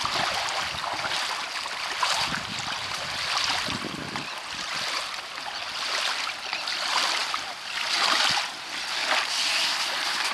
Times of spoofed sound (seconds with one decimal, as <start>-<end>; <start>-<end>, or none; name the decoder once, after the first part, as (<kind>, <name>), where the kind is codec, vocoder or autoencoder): none